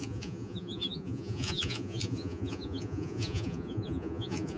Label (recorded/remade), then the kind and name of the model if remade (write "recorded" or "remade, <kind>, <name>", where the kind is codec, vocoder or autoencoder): remade, vocoder, Vocos